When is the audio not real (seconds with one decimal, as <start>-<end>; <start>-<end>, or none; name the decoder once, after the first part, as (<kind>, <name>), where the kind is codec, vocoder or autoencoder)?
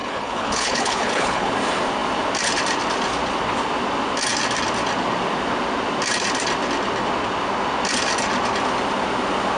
0.0-1.5 (codec, HILCodec)